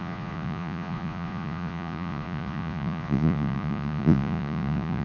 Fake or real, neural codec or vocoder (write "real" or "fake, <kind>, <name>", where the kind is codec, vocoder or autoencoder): fake, vocoder, Vocos